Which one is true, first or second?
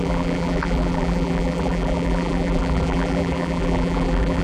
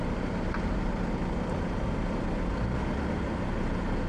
second